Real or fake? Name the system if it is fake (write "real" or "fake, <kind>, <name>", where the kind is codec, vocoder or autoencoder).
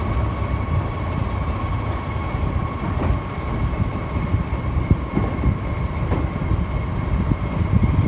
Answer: fake, vocoder, BigVGAN v2